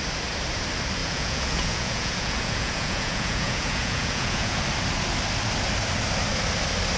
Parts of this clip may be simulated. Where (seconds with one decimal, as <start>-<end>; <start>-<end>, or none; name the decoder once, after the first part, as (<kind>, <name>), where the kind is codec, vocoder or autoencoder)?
1.0-4.6 (vocoder, Vocos)